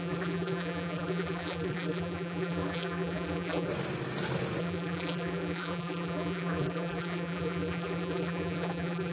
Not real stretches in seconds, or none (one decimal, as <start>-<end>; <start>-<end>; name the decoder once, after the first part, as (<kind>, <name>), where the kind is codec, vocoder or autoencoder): 0.0-3.7 (vocoder, BigVGAN v2); 4.6-9.1